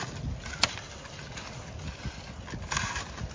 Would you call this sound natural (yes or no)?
yes